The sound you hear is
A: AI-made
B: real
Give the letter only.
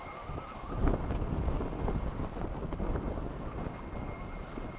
B